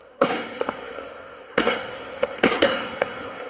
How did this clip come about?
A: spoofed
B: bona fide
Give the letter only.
A